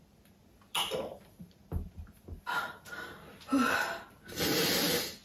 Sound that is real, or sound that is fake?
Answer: real